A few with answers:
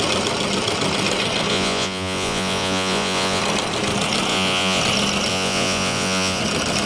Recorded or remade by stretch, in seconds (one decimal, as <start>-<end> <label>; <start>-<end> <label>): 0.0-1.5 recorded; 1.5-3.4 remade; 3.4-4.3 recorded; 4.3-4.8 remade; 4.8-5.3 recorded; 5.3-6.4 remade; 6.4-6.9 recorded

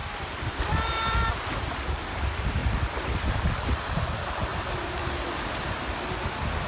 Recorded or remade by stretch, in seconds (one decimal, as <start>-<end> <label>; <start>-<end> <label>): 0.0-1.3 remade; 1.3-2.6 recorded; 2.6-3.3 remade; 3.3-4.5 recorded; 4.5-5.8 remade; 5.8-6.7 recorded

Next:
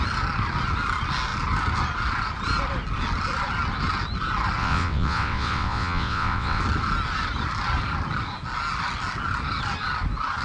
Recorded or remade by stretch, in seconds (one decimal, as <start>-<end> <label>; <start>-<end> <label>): 0.0-4.6 recorded; 4.6-6.6 remade; 6.6-10.4 recorded